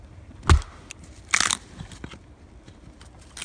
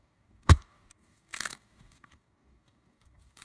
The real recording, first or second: first